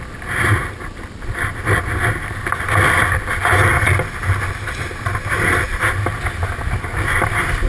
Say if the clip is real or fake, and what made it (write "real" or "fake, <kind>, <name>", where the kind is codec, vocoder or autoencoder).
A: real